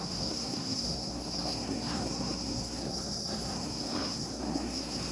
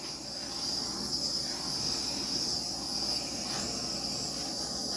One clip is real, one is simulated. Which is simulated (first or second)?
first